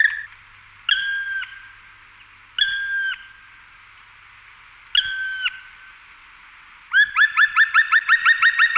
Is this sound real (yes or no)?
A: yes